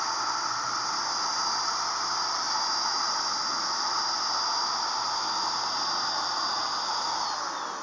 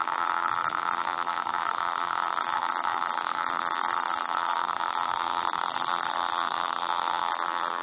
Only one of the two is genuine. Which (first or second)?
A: first